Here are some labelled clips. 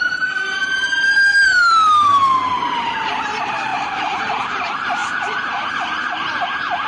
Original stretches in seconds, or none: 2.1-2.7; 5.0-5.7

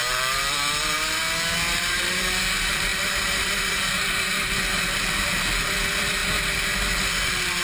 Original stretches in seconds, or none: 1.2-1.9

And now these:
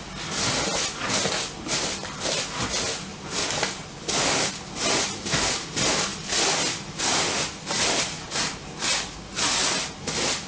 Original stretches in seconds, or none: 0.0-10.5

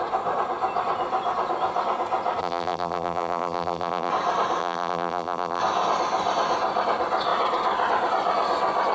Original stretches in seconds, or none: 0.0-2.4; 4.1-4.6; 5.6-8.9

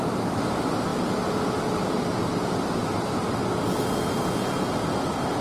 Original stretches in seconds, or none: 0.0-5.4